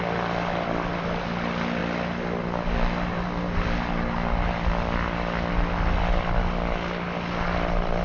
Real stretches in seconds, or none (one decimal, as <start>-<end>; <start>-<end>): 0.0-8.0